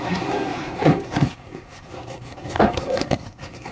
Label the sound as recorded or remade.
remade